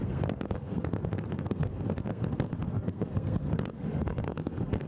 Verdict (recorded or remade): remade